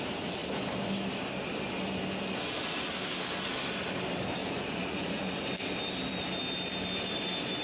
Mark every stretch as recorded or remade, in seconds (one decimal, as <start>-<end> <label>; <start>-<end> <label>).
0.0-4.4 recorded; 4.4-5.5 remade; 5.5-7.6 recorded